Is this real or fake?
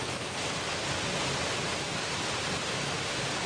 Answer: real